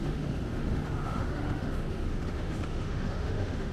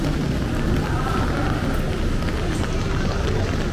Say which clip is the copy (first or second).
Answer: first